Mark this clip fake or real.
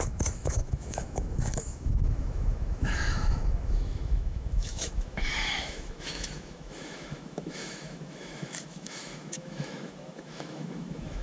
fake